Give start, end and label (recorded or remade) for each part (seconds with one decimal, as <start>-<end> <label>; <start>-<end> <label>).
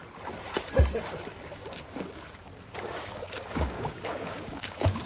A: 0.0-1.6 recorded; 1.6-5.1 remade